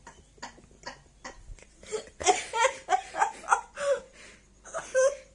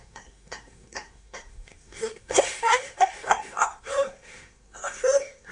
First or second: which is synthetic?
second